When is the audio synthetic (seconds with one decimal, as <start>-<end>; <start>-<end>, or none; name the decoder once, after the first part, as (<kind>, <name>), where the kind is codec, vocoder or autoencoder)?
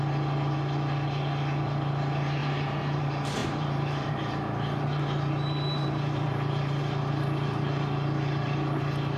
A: 2.4-3.0 (vocoder, BigVGAN v2); 3.4-6.8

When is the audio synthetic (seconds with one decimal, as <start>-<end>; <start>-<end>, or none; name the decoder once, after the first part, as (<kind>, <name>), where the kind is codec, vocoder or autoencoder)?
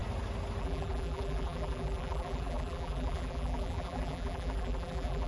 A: 0.6-5.3 (vocoder, BigVGAN v2)